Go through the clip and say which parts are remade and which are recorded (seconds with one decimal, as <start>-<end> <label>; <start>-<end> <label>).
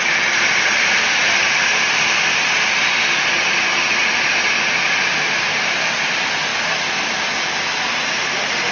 0.0-8.7 recorded